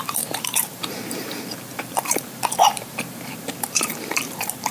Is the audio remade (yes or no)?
yes